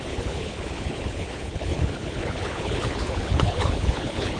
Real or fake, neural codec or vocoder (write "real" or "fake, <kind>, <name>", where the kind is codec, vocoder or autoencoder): fake, codec, HILCodec